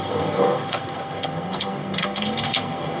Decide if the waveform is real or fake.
fake